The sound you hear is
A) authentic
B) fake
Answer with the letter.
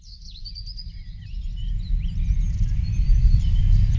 A